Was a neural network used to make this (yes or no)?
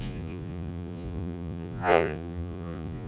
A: yes